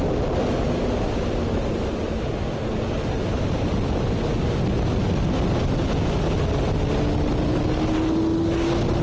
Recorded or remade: recorded